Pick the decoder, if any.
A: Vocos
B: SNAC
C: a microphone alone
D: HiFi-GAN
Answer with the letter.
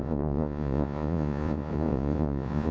A